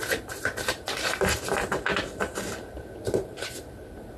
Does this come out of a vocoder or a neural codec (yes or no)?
yes